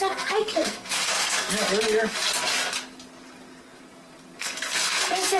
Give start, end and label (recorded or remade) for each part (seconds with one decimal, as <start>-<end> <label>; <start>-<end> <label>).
0.0-1.5 remade; 1.5-4.4 recorded; 4.4-5.4 remade